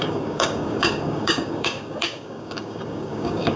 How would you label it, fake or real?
fake